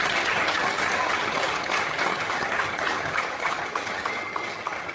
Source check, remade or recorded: remade